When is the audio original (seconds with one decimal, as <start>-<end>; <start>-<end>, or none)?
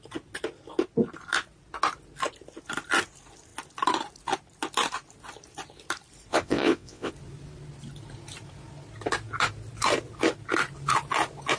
0.0-6.3; 7.1-11.6